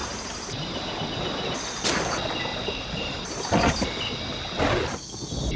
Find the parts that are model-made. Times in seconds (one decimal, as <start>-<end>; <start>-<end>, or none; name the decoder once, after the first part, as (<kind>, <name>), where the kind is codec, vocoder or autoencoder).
0.0-0.9 (vocoder, BigVGAN v2); 2.5-3.4

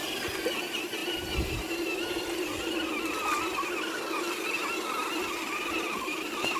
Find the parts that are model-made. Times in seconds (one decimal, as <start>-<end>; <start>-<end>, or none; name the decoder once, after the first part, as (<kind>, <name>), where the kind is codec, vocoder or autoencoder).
4.6-6.1 (vocoder, BigVGAN v2)

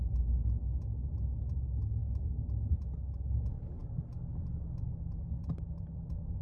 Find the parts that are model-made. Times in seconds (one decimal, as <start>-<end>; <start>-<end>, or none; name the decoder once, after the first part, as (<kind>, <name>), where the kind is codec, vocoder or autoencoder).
none

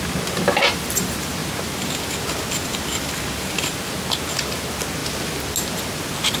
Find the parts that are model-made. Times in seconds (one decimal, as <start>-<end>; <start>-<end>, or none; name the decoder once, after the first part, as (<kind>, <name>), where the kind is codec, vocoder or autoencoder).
none

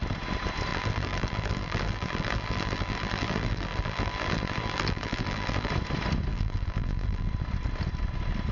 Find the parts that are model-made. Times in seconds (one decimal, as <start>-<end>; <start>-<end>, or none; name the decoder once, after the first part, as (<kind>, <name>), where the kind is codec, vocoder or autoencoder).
0.7-5.7 (vocoder, BigVGAN v2); 6.3-7.3

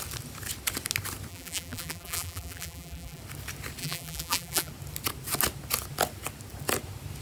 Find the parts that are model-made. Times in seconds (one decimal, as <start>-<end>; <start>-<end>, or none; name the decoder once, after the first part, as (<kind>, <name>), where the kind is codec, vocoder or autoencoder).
1.3-3.2 (vocoder, BigVGAN v2); 3.8-4.7

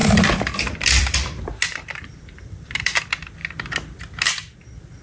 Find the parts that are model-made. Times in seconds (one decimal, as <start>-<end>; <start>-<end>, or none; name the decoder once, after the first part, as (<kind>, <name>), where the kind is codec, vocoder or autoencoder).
0.0-3.0 (vocoder, BigVGAN v2)